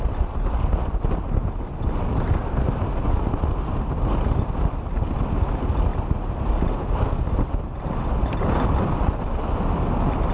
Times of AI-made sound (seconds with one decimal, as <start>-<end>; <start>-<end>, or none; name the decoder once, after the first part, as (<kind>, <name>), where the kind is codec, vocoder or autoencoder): none